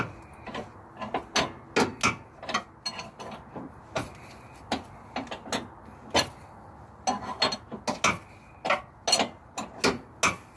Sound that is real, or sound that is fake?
real